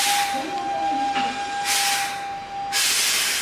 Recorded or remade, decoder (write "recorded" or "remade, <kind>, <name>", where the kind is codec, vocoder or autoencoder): recorded